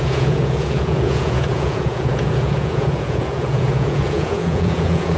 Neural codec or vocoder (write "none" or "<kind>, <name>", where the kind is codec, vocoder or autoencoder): vocoder, Vocos